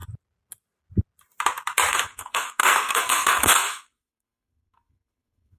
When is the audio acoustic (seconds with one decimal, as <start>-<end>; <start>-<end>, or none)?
0.0-1.9